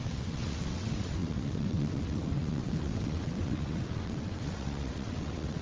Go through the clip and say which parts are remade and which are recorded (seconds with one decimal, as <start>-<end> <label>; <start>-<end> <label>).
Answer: 0.0-5.6 remade